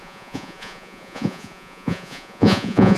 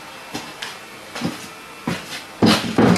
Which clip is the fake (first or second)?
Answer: first